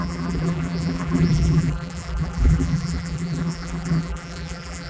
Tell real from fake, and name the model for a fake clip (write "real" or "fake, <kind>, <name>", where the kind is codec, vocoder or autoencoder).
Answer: fake, vocoder, BigVGAN v2